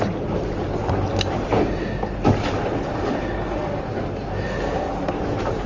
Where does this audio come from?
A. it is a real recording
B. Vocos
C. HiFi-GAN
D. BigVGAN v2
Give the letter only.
A